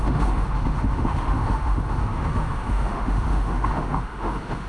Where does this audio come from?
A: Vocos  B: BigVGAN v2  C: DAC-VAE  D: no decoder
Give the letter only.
C